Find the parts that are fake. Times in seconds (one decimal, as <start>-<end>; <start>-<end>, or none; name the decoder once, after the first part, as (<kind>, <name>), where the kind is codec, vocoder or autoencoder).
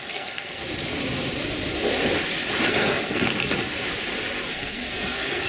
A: 0.0-0.6 (codec, SNAC); 2.7-3.3; 4.5-5.5